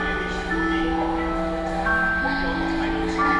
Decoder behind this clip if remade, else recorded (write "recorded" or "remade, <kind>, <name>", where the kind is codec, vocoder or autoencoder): recorded